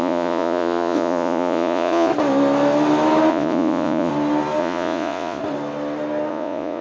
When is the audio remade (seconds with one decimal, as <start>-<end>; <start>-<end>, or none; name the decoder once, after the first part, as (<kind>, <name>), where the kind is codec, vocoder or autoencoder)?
0.0-2.1 (vocoder, Vocos); 3.3-4.1; 4.6-5.4; 6.3-6.8